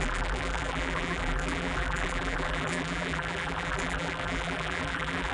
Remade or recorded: remade